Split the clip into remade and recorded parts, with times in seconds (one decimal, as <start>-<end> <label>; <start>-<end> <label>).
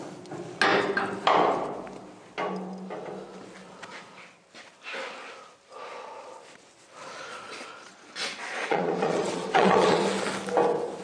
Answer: 0.0-7.3 recorded; 7.3-10.0 remade; 10.0-11.0 recorded